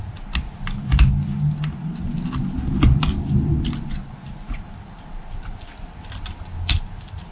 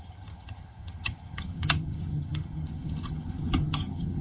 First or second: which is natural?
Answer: first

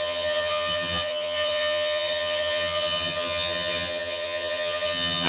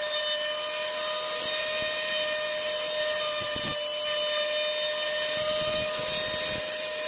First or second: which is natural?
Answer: second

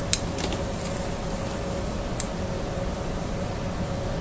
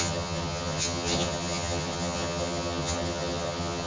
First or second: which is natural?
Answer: first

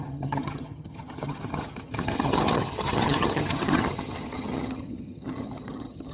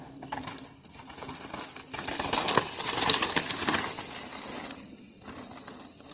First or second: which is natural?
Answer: second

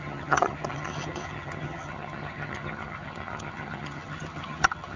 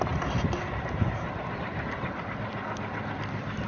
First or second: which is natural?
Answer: second